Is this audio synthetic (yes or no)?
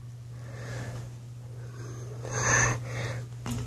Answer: no